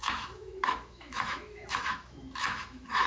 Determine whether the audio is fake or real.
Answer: fake